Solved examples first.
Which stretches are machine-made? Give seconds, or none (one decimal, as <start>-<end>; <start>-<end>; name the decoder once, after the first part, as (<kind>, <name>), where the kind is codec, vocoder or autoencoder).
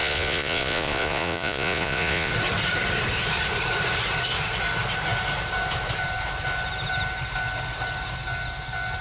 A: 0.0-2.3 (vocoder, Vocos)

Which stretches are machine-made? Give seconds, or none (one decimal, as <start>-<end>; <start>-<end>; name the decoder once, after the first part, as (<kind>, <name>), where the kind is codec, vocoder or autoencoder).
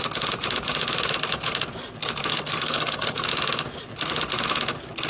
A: 2.3-3.3 (codec, SNAC)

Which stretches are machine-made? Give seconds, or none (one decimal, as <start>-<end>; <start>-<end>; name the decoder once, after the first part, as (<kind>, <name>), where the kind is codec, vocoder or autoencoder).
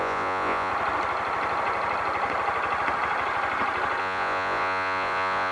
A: 0.0-0.7 (vocoder, Vocos); 4.0-5.5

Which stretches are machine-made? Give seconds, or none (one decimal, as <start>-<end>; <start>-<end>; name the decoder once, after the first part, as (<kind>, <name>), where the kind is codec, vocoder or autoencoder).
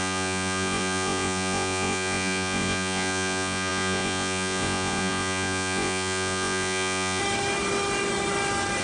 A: 0.0-7.2 (vocoder, Vocos)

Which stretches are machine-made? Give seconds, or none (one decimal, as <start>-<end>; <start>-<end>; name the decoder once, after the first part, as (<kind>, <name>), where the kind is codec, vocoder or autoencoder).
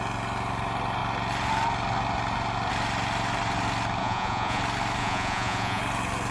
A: 4.0-4.6 (vocoder, Vocos); 5.0-5.8